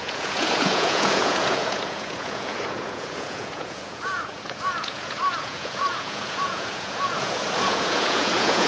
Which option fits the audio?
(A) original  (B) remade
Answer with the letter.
B